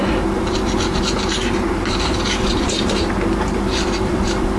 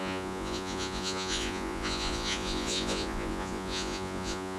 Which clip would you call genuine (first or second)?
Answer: first